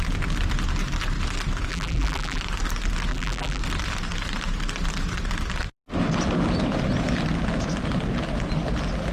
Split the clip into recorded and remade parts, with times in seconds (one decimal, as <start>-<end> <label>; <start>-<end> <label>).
0.0-1.7 recorded; 1.7-2.4 remade; 2.4-3.1 recorded; 3.1-3.6 remade; 3.6-9.1 recorded